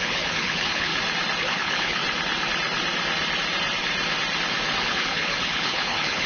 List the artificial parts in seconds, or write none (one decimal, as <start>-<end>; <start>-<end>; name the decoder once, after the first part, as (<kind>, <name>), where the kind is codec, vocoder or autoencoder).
0.0-0.9 (codec, HILCodec); 1.4-2.0; 4.8-6.3